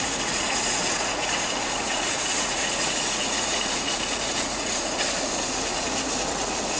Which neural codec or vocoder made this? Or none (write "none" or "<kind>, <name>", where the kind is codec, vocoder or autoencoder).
vocoder, Vocos